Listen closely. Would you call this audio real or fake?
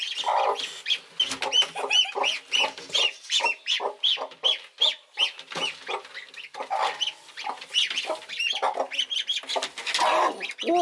real